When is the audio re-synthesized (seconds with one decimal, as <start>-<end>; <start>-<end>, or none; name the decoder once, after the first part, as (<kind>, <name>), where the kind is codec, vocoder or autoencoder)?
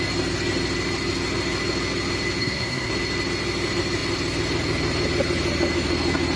2.4-2.9 (codec, SNAC)